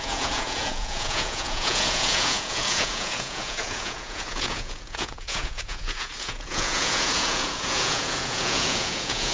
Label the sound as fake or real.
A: fake